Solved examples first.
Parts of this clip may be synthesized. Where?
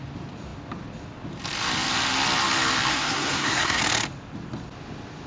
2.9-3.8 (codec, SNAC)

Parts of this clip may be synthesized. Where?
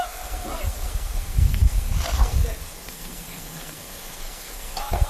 0.0-5.1 (codec, SNAC)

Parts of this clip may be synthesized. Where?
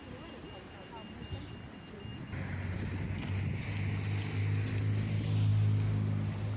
none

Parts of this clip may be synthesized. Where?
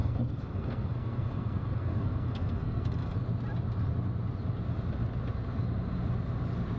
0.0-3.2 (codec, SNAC)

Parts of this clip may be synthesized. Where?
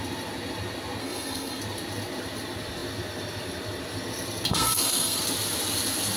1.0-1.6 (codec, SNAC); 4.5-5.2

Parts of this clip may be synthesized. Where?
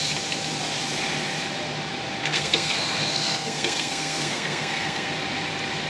2.2-5.1 (codec, SNAC)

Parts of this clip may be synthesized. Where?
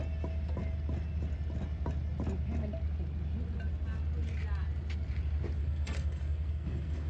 5.6-7.1 (codec, SNAC)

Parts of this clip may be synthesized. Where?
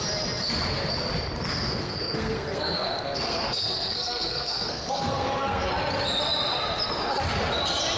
1.5-5.7 (codec, SNAC)